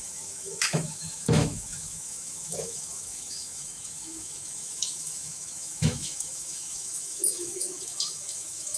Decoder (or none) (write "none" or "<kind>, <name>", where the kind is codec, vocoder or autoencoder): autoencoder, DAC-VAE